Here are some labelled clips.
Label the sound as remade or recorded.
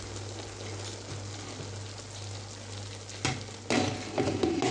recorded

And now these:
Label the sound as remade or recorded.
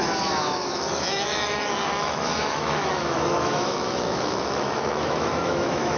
remade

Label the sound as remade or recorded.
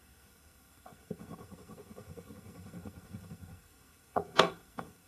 remade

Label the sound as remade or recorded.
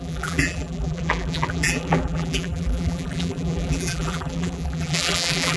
remade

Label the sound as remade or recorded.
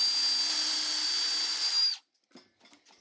recorded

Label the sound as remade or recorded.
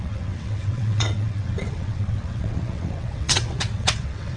remade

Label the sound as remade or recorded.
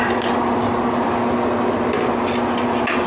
recorded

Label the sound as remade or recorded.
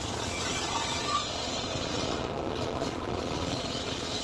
remade